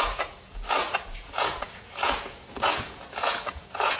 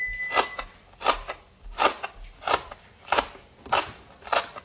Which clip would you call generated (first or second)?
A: first